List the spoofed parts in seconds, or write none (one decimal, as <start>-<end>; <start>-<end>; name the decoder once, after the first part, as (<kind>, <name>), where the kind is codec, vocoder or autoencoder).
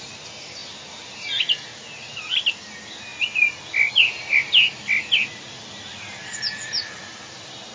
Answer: none